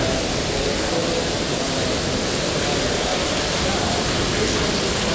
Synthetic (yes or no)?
no